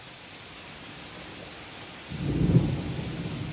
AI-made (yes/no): no